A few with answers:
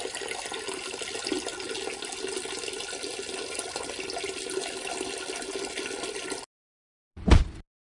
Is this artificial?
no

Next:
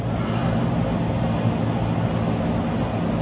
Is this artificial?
no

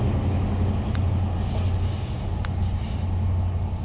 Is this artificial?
no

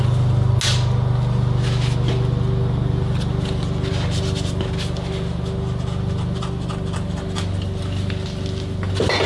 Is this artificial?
no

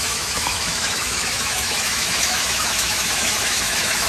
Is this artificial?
yes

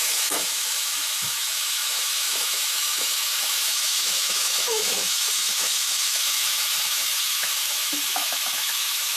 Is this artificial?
yes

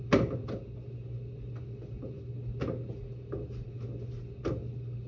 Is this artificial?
no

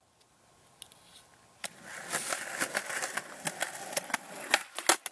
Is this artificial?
no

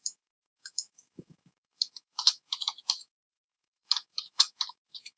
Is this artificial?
yes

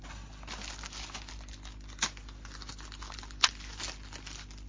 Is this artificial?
no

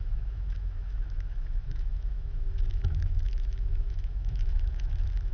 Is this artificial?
yes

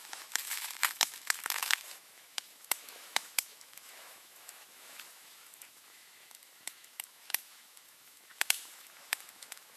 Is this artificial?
yes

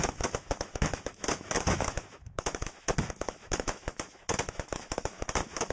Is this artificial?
yes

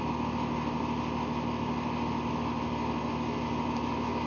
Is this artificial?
no